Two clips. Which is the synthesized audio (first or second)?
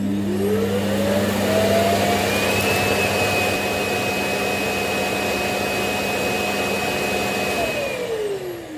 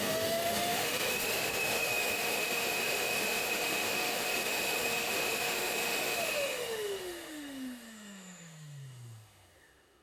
second